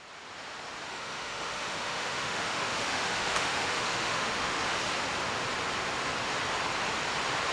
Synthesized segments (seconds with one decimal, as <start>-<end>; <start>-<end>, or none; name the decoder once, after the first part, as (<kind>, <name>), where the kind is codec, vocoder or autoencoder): 0.9-4.6 (autoencoder, DAC-VAE)